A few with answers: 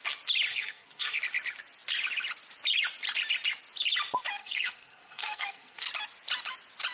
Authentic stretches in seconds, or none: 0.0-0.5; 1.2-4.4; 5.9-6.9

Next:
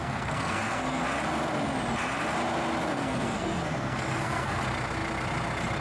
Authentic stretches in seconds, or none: 1.0-2.9; 4.6-5.8

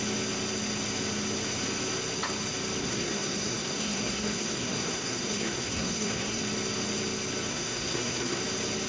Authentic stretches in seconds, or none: 0.0-2.8; 6.4-7.5; 8.4-8.9

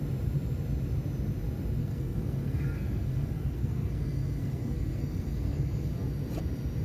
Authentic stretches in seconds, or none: 0.0-1.8; 5.9-6.8

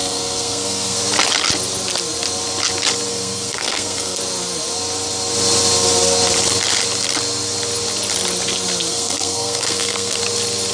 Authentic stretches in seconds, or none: 1.0-3.1; 4.2-8.9; 10.2-10.7

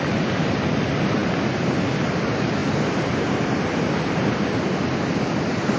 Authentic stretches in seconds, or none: 0.0-5.8